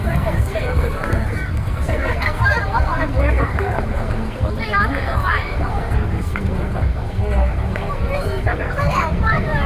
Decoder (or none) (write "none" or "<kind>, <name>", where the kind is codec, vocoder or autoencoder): codec, SNAC